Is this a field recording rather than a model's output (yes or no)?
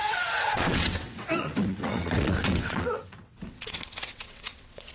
no